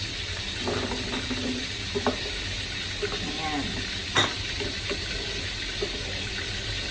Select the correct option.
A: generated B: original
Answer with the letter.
B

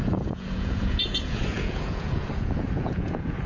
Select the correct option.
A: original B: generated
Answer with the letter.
B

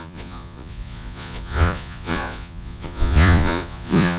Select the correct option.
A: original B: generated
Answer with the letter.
B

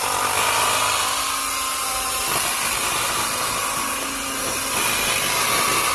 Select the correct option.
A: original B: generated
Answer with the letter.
A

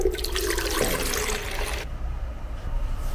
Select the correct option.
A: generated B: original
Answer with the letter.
B